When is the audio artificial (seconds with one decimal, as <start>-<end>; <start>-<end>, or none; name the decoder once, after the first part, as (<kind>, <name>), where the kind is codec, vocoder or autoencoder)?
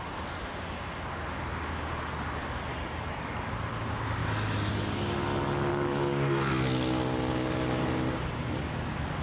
2.7-3.5 (codec, DAC); 4.2-4.7; 5.7-6.5